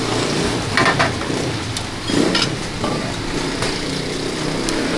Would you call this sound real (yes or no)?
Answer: yes